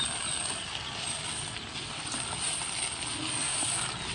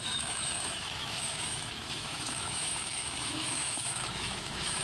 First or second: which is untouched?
first